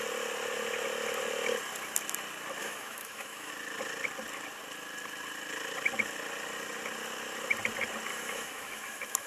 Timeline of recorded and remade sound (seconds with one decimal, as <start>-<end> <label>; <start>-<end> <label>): 0.0-2.6 recorded; 2.6-3.5 remade; 3.5-8.1 recorded; 8.1-9.3 remade